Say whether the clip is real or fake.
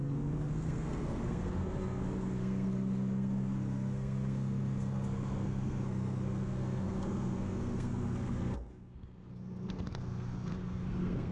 fake